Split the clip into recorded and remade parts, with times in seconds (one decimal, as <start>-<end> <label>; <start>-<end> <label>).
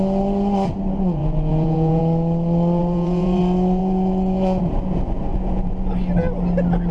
0.0-1.2 recorded; 1.2-2.0 remade; 2.0-2.8 recorded; 2.8-3.4 remade; 3.4-3.8 recorded; 3.8-4.8 remade; 4.8-5.3 recorded; 5.3-5.9 remade; 5.9-6.9 recorded